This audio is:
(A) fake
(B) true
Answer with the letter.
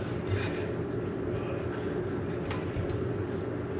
B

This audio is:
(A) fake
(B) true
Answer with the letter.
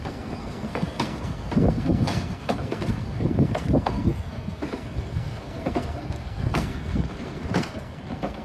A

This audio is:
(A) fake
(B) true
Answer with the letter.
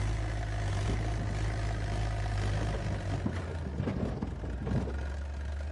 B